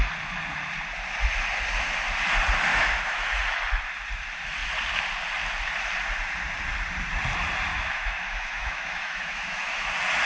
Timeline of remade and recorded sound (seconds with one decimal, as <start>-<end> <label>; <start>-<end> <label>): 0.0-2.7 recorded; 2.7-3.3 remade; 3.3-7.7 recorded; 7.7-9.9 remade; 9.9-10.3 recorded